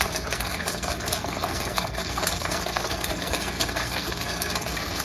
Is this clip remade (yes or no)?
yes